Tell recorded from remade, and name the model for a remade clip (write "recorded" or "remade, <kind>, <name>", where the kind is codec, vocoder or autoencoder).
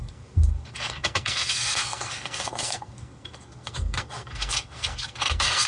remade, codec, SNAC